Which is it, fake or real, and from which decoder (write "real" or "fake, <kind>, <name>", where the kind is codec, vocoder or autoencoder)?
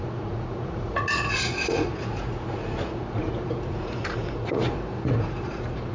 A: fake, vocoder, Vocos